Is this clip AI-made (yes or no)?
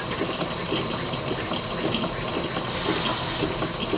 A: no